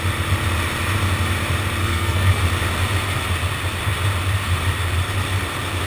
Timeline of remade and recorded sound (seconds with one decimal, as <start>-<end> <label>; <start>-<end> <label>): 0.0-1.8 recorded; 1.8-2.4 remade; 2.4-5.9 recorded